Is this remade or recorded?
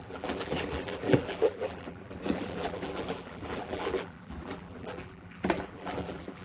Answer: remade